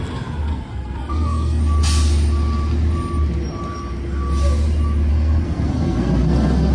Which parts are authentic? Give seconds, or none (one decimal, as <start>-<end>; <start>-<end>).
0.0-0.5; 1.6-5.1